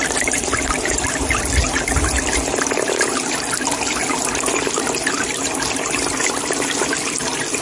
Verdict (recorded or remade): recorded